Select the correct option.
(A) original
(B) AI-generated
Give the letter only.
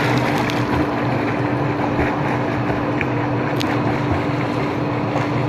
A